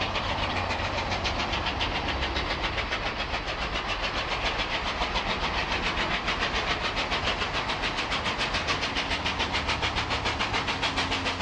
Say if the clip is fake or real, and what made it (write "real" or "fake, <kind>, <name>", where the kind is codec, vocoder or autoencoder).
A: real